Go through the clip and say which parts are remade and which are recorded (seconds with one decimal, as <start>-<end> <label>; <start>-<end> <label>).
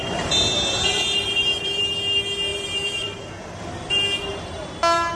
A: 0.0-1.8 remade; 1.8-2.5 recorded; 2.5-3.3 remade; 3.3-5.2 recorded